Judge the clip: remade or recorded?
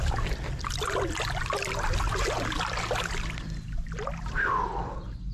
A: recorded